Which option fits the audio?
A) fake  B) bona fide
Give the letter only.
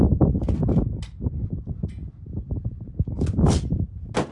B